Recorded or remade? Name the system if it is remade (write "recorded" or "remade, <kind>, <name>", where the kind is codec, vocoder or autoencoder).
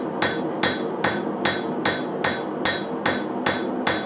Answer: recorded